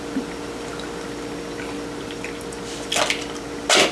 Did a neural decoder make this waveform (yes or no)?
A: no